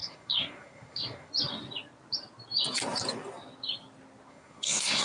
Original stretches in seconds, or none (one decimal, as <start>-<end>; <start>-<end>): 1.3-4.3